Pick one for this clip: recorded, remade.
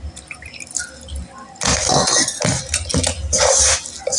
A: recorded